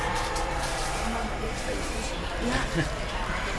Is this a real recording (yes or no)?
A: no